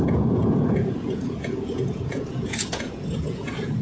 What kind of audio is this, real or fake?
fake